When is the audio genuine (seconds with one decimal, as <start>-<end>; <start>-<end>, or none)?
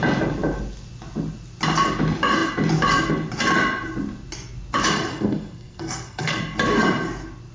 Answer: 0.0-5.1; 6.4-7.5